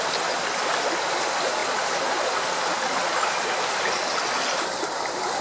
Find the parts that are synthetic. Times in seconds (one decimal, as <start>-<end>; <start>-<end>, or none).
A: none